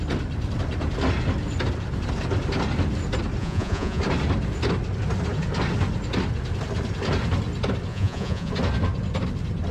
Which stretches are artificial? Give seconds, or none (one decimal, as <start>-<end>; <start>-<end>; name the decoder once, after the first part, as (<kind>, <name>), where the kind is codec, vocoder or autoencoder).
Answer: 3.4-4.0 (vocoder, Vocos); 7.9-8.5